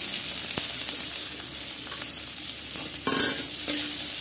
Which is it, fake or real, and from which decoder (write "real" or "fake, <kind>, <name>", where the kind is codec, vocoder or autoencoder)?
real